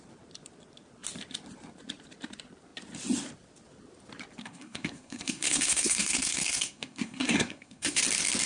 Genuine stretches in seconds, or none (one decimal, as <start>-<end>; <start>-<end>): 0.0-4.4; 8.0-8.5

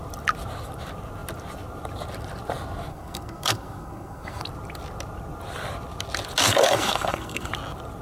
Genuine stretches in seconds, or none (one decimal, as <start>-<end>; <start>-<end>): 0.0-2.9; 4.4-6.4; 7.5-8.0